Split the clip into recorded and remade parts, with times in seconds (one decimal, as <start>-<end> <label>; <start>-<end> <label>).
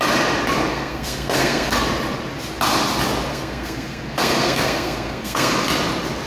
0.0-0.7 recorded; 0.7-1.8 remade; 1.8-3.3 recorded; 3.3-5.5 remade; 5.5-6.3 recorded